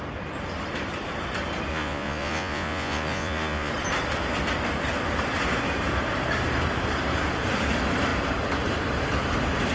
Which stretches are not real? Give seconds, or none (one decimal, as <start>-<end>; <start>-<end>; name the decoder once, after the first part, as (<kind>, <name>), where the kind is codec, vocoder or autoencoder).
1.7-3.7 (vocoder, Vocos)